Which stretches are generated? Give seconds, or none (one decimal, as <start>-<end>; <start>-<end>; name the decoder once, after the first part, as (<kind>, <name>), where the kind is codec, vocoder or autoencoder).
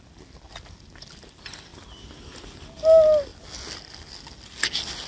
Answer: none